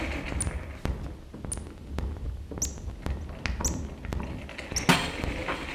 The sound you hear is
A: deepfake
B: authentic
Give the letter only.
B